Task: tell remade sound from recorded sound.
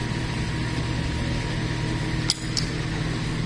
recorded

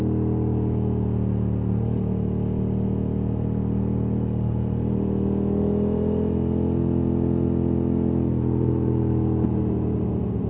recorded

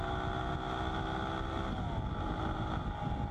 recorded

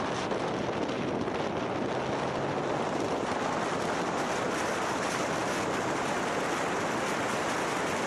recorded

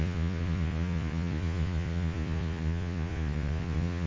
remade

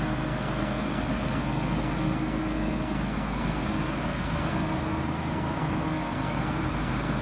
remade